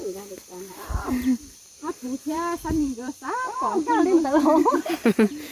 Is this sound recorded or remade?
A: remade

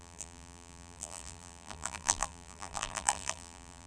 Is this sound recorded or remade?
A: remade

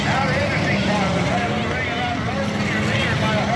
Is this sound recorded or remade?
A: recorded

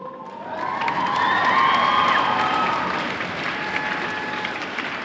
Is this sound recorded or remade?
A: recorded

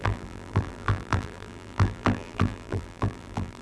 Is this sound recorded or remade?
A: remade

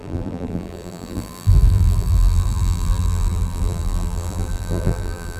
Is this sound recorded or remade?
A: remade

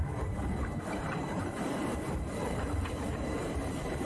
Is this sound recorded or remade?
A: remade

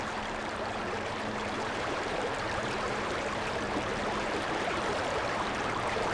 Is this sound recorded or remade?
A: remade